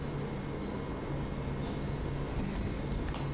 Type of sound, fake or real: real